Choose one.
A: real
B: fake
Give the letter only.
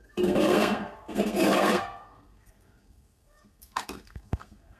B